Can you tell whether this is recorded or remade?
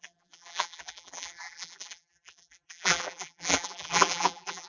remade